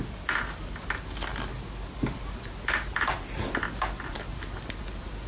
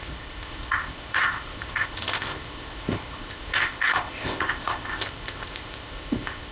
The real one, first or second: first